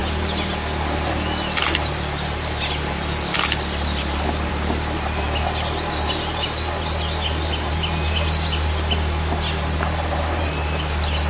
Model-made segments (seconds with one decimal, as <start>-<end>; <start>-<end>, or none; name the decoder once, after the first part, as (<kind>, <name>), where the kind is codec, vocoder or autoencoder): none